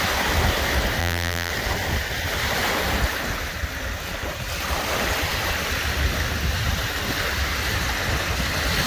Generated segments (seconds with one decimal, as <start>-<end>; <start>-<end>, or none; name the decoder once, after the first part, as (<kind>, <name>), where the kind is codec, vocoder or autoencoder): 1.0-1.5 (vocoder, BigVGAN v2)